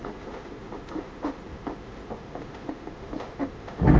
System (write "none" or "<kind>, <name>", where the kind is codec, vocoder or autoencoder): autoencoder, DAC-VAE